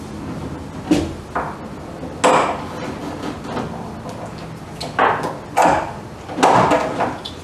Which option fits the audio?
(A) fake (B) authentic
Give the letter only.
B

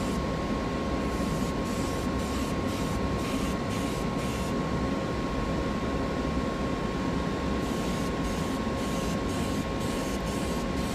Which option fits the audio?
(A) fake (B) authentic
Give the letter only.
B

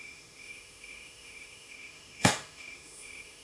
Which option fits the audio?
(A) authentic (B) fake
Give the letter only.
B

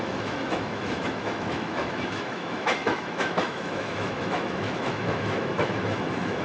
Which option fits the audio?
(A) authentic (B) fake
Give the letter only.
B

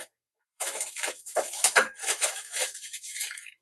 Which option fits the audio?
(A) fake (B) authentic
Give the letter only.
A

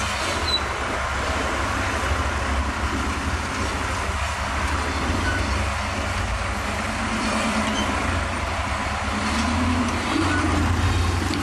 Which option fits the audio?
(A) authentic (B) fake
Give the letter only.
A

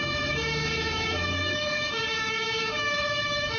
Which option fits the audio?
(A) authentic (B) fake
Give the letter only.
B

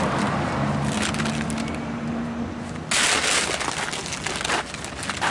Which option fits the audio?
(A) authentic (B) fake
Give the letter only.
A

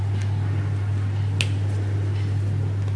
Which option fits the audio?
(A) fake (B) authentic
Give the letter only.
B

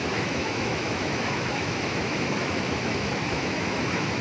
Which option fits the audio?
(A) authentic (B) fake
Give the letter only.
B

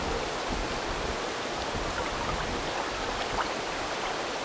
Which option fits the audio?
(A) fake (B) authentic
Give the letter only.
B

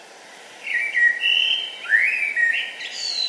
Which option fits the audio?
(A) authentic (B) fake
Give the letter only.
A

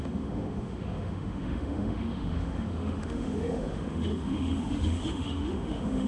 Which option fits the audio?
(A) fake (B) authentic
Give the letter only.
A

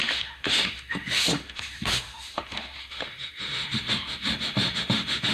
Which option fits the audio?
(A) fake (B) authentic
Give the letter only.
A